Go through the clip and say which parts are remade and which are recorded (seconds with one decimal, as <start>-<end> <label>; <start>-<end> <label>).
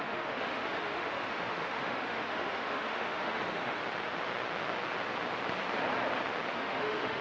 0.0-3.8 remade; 3.8-6.5 recorded; 6.5-7.2 remade